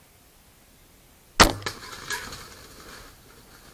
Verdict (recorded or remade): recorded